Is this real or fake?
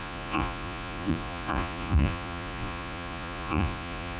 fake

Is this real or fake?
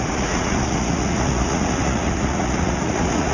fake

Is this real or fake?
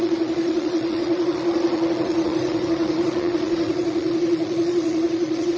fake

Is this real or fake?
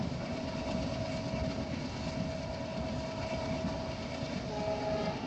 real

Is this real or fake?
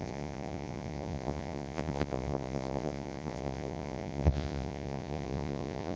fake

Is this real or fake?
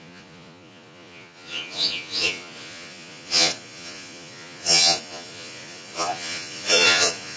fake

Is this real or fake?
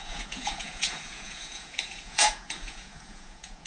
fake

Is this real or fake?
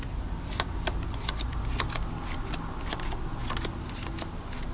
real